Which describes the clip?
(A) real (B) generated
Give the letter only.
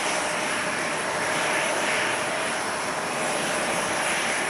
B